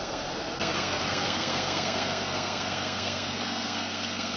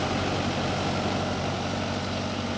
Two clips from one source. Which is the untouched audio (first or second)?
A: second